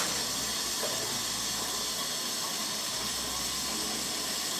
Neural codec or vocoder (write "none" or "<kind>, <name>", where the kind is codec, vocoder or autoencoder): none